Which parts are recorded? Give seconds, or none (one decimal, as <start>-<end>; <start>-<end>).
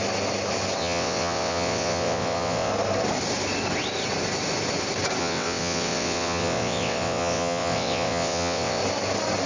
0.0-0.8; 2.7-5.2; 8.8-9.5